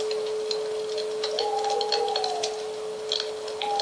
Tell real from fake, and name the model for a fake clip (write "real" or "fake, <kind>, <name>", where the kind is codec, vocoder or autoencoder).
real